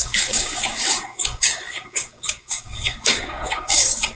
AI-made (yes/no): yes